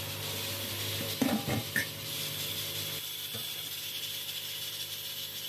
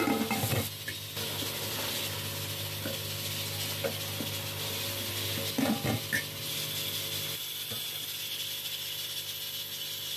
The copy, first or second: first